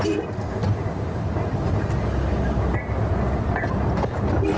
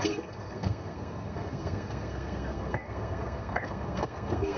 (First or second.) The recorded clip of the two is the first